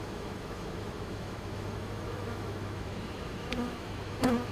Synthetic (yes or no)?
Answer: yes